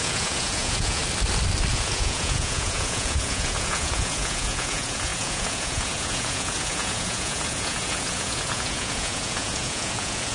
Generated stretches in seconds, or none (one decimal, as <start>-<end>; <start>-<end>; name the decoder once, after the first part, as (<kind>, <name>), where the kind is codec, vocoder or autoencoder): 0.0-1.0 (vocoder, Vocos); 1.7-10.3